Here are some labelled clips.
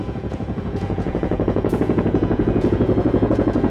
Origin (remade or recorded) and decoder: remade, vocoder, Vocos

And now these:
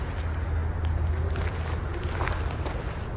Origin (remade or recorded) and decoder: recorded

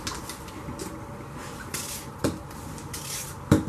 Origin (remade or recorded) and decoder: recorded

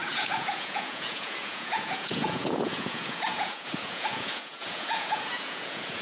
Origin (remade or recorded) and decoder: remade, vocoder, Vocos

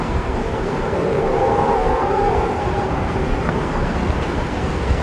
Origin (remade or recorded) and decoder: remade, codec, SNAC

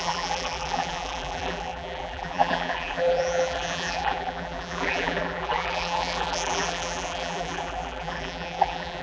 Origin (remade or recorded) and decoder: remade, vocoder, BigVGAN v2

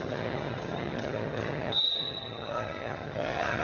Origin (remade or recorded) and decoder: remade, vocoder, HiFi-GAN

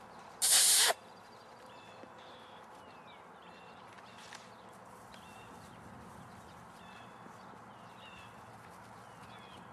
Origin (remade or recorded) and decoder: recorded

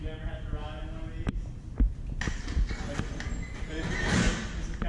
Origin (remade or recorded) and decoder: recorded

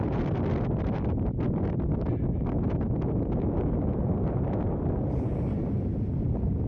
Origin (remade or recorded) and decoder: recorded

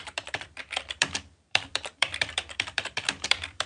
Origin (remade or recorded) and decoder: remade, vocoder, BigVGAN v2